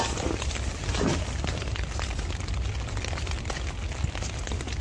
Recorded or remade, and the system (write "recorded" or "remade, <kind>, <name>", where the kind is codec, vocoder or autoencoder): recorded